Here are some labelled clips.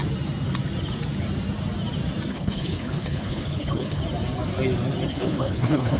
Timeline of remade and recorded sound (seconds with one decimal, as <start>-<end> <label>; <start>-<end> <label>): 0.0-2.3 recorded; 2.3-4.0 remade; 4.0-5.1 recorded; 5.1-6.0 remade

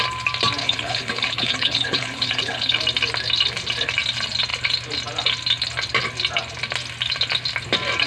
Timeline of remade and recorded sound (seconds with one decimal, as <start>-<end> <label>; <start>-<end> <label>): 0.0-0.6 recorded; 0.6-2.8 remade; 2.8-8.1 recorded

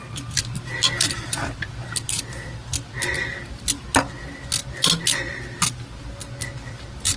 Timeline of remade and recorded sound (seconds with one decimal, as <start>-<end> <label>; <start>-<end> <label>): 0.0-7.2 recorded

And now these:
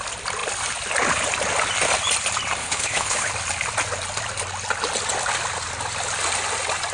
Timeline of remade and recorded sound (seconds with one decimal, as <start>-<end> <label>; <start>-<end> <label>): 0.0-2.6 recorded; 2.6-3.3 remade; 3.3-6.9 recorded